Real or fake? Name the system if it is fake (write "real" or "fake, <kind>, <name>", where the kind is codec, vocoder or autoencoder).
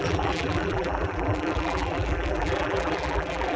fake, vocoder, BigVGAN v2